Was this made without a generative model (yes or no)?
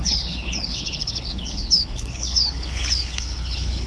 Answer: no